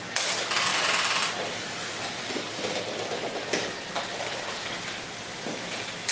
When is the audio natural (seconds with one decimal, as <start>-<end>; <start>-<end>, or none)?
0.0-6.1